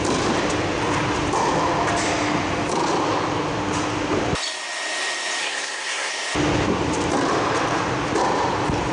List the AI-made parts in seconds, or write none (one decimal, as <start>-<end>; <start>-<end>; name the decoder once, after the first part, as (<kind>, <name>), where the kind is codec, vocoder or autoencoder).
5.4-6.1 (codec, SNAC)